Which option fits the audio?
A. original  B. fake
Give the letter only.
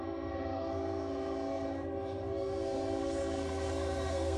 B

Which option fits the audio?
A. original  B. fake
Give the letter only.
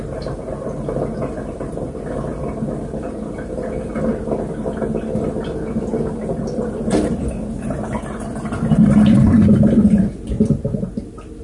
A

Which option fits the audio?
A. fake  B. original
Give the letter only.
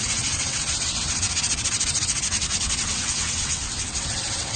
A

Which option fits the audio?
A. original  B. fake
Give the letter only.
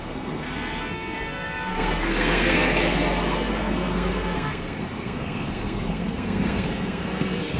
B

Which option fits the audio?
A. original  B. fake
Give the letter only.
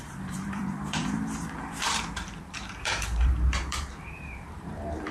B